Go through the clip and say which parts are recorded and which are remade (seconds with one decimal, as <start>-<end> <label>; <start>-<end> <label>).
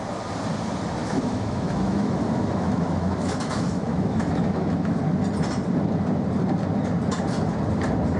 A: 0.0-1.0 recorded; 1.0-5.0 remade; 5.0-8.2 recorded